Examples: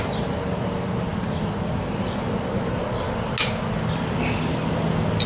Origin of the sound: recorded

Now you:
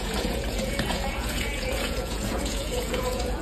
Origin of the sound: remade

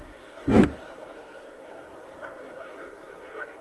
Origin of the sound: remade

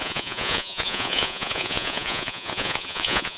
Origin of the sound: remade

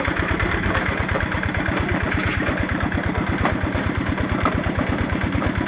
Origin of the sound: remade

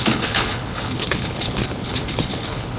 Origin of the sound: remade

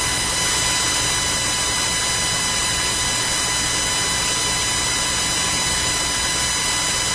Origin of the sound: recorded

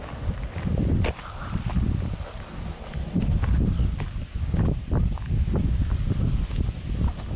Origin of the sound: recorded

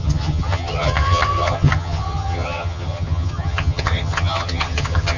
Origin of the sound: remade